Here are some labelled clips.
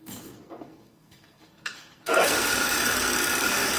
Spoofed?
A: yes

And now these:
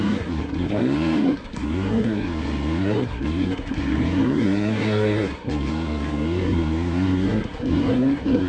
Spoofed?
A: yes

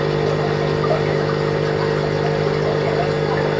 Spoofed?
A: no